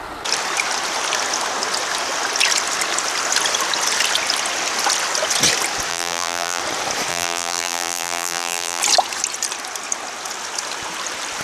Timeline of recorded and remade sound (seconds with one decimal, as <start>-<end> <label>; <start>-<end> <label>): 0.0-5.9 recorded; 5.9-6.6 remade; 6.6-7.1 recorded; 7.1-8.8 remade; 8.8-11.4 recorded